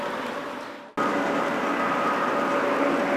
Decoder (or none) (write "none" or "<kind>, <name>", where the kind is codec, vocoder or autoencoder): none